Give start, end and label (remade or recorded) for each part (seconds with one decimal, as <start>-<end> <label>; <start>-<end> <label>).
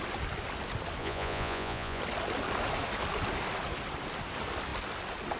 0.0-1.0 recorded; 1.0-2.0 remade; 2.0-5.4 recorded